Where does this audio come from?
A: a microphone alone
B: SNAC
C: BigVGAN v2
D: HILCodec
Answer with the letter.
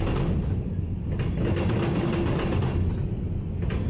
A